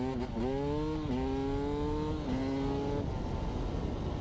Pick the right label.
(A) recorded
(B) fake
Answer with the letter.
A